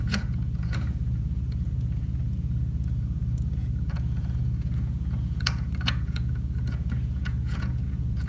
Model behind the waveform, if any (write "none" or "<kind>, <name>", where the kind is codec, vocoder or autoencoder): vocoder, Vocos